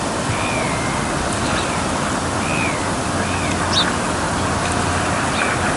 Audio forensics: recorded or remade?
recorded